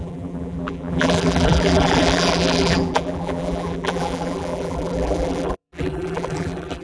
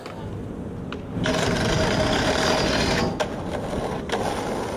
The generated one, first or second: first